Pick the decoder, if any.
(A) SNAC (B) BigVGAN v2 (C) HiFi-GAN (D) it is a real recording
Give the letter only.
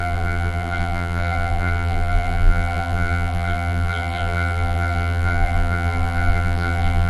B